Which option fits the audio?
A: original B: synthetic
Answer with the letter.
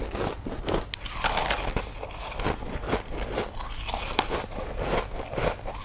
A